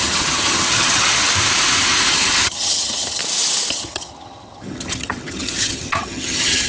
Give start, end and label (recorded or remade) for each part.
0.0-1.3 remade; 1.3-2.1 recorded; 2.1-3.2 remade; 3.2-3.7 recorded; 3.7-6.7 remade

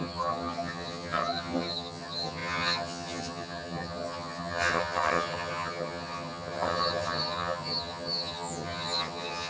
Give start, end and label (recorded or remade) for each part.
0.0-9.5 remade

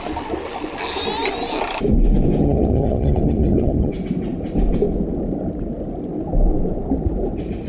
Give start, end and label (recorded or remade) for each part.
0.0-2.4 recorded; 2.4-3.9 remade; 3.9-7.7 recorded

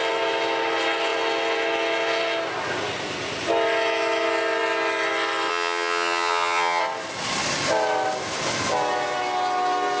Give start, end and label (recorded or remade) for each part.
0.0-5.5 recorded; 5.5-6.8 remade; 6.8-10.0 recorded